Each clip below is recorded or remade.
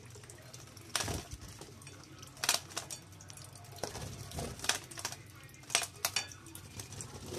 recorded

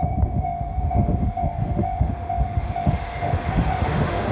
remade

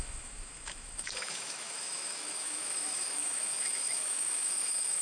remade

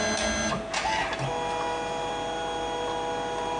recorded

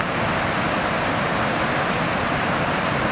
recorded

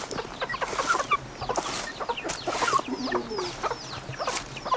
recorded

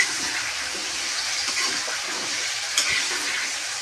recorded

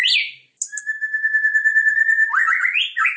recorded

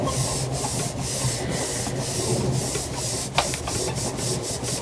recorded